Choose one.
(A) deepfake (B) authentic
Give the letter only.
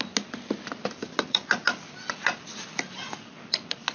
B